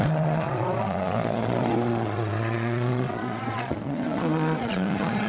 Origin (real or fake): fake